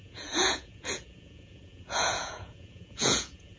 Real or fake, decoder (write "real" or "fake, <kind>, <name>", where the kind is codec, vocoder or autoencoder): fake, vocoder, Vocos